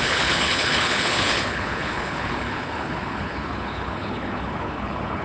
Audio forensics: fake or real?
fake